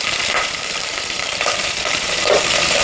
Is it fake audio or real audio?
fake